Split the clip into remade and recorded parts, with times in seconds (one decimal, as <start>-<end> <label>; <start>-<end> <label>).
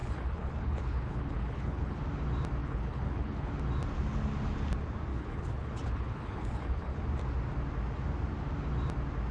0.0-2.0 remade; 2.0-2.6 recorded; 2.6-3.5 remade; 3.5-5.1 recorded; 5.1-7.0 remade; 7.0-9.3 recorded